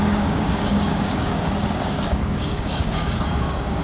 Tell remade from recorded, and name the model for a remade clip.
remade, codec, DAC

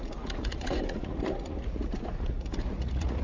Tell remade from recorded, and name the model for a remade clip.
remade, vocoder, Vocos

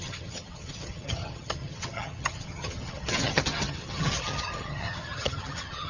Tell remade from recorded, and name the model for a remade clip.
remade, vocoder, HiFi-GAN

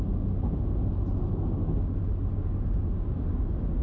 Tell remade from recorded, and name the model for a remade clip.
recorded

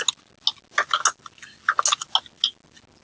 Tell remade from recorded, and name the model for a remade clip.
recorded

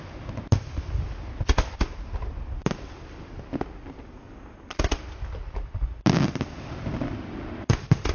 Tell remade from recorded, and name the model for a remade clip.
recorded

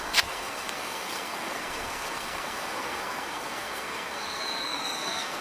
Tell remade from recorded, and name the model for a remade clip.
remade, codec, SNAC